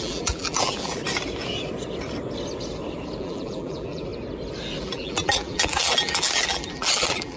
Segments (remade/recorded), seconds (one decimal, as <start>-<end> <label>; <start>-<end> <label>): 0.0-1.0 remade; 1.0-3.2 recorded; 3.2-4.1 remade; 4.1-4.8 recorded; 4.8-7.4 remade